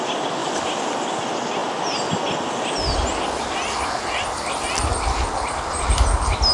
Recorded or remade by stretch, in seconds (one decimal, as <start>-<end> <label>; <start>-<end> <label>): 0.0-0.4 recorded; 0.4-1.2 remade; 1.2-6.5 recorded